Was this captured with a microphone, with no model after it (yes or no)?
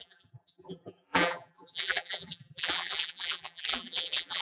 no